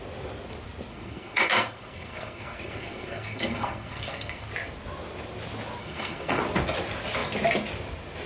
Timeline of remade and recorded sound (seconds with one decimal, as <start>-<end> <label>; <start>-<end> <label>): 0.0-0.9 recorded; 0.9-4.5 remade; 4.5-5.8 recorded; 5.8-6.4 remade; 6.4-8.3 recorded